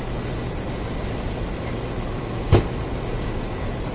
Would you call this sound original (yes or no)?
yes